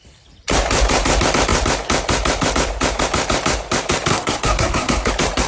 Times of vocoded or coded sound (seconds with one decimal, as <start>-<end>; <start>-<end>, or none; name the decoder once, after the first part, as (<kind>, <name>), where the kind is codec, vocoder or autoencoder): 4.1-5.1 (codec, SNAC)